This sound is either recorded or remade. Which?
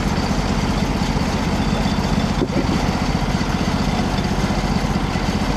recorded